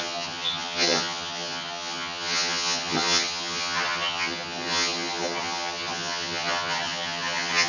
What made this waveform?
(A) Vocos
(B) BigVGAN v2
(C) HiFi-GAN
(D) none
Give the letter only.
C